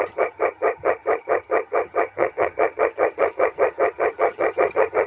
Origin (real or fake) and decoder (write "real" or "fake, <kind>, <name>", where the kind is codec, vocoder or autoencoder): fake, vocoder, HiFi-GAN